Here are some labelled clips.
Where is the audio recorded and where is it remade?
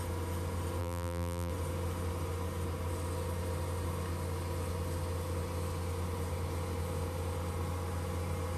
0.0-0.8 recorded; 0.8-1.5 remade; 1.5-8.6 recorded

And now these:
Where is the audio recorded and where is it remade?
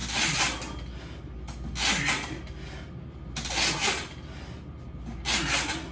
0.0-5.9 recorded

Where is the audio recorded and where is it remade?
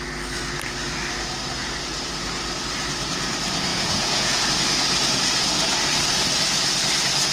0.0-3.7 recorded; 3.7-4.4 remade; 4.4-7.3 recorded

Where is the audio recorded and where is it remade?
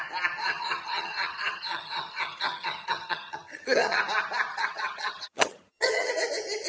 0.0-0.4 recorded; 0.4-4.0 remade; 4.0-4.5 recorded; 4.5-6.1 remade; 6.1-6.7 recorded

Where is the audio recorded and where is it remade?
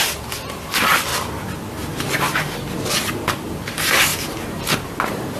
0.0-4.1 recorded; 4.1-4.7 remade; 4.7-5.4 recorded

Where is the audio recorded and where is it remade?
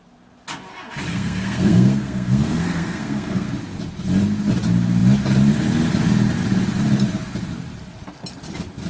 0.0-1.1 recorded; 1.1-3.5 remade; 3.5-8.9 recorded